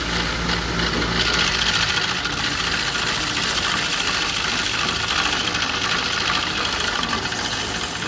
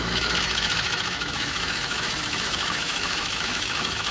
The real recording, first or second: first